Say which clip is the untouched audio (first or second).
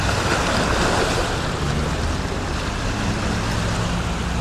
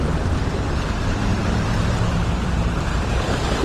first